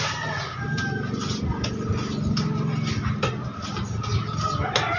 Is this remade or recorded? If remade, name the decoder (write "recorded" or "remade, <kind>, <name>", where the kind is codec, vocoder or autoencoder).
recorded